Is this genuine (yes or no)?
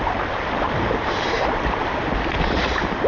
no